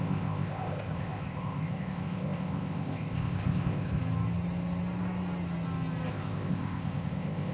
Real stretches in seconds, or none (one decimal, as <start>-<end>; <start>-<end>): 4.0-6.1